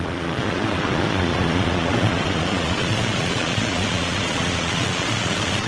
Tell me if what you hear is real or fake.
fake